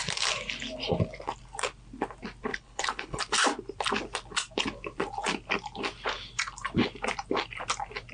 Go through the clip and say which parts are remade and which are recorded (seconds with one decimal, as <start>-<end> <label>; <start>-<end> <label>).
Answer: 0.0-2.5 recorded; 2.5-3.2 remade; 3.2-8.1 recorded